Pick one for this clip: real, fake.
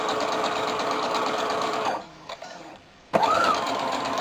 fake